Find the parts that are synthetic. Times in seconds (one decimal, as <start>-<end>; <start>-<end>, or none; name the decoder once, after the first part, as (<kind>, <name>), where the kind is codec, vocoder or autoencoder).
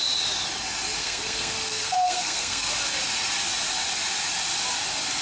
1.0-2.7 (codec, SNAC)